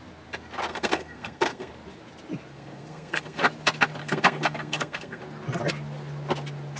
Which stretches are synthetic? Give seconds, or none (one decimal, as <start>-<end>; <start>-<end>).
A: 0.7-1.7; 2.5-3.4; 4.0-5.2

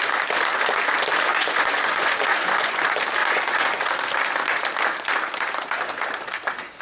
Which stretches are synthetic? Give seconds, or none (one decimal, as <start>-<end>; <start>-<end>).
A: 1.3-2.8; 3.2-3.9

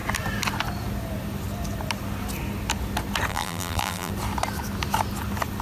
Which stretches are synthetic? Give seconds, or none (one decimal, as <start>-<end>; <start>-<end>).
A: 3.3-4.1

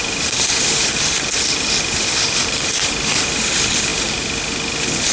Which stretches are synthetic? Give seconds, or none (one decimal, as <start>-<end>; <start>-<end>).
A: none

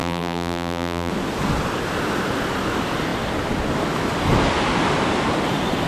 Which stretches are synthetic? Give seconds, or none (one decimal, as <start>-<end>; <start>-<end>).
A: 0.0-1.1

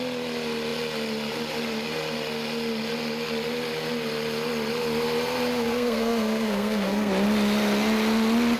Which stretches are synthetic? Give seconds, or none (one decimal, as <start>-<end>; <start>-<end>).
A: 5.5-7.1

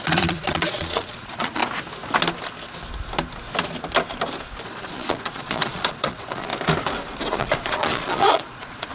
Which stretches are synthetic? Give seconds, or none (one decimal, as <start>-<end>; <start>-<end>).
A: 0.0-1.6; 4.6-6.5; 7.3-8.9

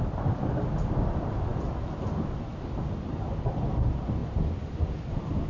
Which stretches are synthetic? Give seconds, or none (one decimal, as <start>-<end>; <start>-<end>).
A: none